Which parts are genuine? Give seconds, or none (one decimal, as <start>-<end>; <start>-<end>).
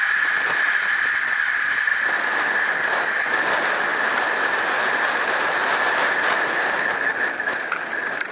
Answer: 0.0-8.3